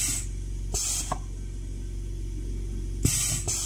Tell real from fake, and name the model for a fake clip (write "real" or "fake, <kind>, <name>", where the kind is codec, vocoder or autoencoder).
real